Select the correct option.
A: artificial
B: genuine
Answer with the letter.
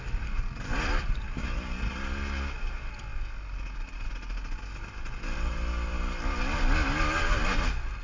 B